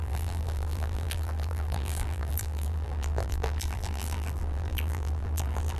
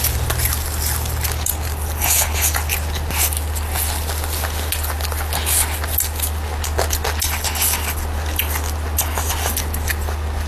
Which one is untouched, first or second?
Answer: second